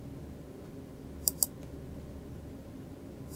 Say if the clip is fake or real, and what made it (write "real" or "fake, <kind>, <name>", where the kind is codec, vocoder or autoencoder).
real